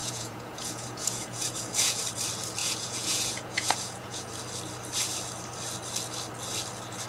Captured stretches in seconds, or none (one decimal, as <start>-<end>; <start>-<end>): 2.0-2.6; 4.3-7.1